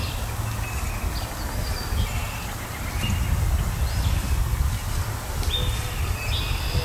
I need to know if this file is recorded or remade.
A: recorded